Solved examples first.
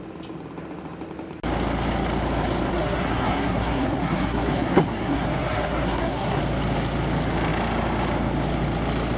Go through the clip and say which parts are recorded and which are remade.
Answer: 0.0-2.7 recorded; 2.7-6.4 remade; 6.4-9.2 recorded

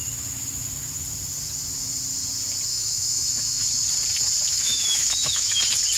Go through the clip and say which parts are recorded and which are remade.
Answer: 0.0-2.7 recorded; 2.7-3.6 remade; 3.6-4.5 recorded; 4.5-5.6 remade; 5.6-6.0 recorded

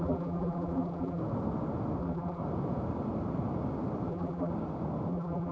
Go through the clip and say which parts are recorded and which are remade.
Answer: 0.0-1.2 remade; 1.2-2.0 recorded; 2.0-2.4 remade; 2.4-4.1 recorded; 4.1-4.5 remade; 4.5-5.1 recorded; 5.1-5.5 remade

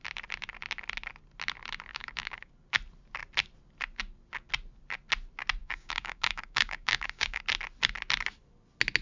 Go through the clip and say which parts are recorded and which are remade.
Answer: 0.0-1.9 recorded; 1.9-2.5 remade; 2.5-5.6 recorded; 5.6-7.4 remade; 7.4-9.0 recorded

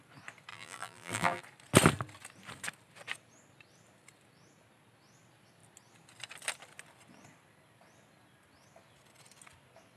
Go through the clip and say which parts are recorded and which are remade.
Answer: 0.0-0.5 recorded; 0.5-1.4 remade; 1.4-10.0 recorded

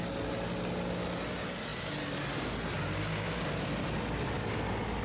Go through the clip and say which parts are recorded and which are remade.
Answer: 0.0-5.0 recorded

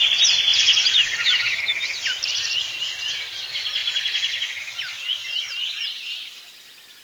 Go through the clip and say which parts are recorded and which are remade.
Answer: 0.0-5.2 recorded; 5.2-5.8 remade; 5.8-7.0 recorded

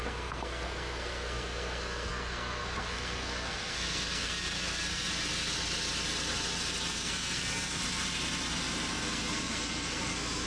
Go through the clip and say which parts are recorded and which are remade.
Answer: 0.0-5.1 remade; 5.1-6.9 recorded; 6.9-7.8 remade; 7.8-8.9 recorded; 8.9-10.5 remade